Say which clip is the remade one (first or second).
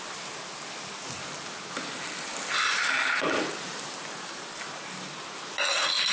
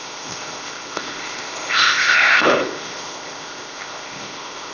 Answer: second